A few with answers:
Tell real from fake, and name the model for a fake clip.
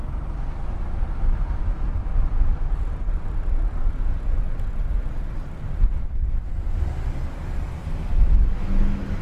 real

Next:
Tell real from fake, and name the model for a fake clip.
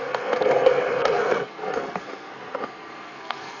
fake, codec, SNAC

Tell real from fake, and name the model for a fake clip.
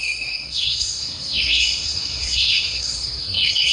fake, codec, SNAC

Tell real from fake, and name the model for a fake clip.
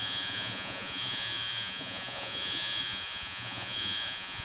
fake, vocoder, Vocos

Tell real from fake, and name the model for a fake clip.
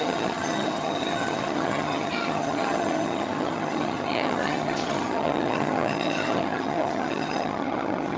fake, vocoder, HiFi-GAN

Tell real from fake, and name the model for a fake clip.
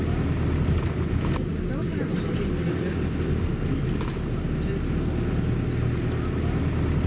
real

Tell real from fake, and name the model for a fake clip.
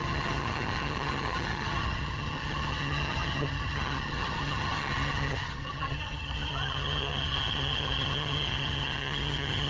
fake, vocoder, HiFi-GAN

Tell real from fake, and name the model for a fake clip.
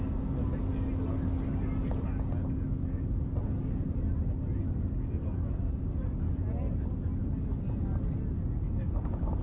real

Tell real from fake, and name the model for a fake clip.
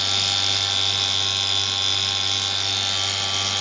real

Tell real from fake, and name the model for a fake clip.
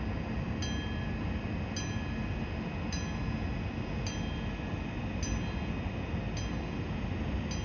real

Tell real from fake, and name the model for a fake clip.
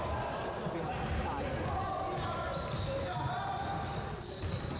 real